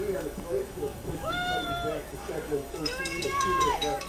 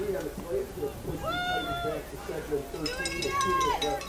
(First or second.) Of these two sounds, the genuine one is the second